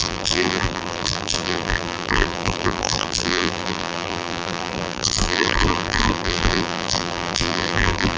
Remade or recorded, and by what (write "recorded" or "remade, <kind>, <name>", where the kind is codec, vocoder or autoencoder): remade, vocoder, BigVGAN v2